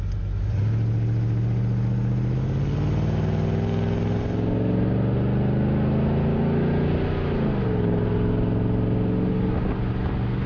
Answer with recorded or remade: recorded